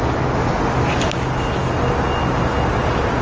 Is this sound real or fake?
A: real